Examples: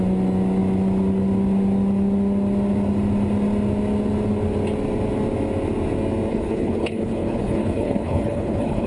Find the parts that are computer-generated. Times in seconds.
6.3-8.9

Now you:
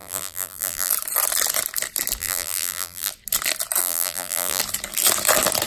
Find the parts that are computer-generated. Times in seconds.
0.0-0.9; 2.2-3.1; 3.8-4.6

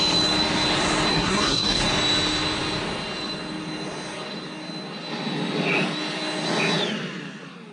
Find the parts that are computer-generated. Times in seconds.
1.1-1.8

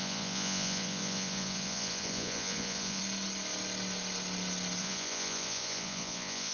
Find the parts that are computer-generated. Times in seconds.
0.0-3.0; 4.8-6.5

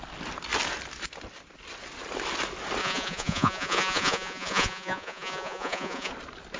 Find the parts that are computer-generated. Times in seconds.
2.8-6.1

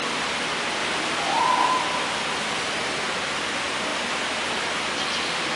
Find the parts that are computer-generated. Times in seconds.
none

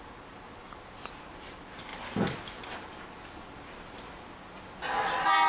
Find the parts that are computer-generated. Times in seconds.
none

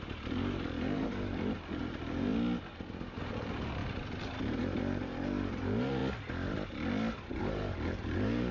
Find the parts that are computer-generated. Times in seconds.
0.0-2.3; 3.3-3.8; 4.4-6.0; 7.4-8.5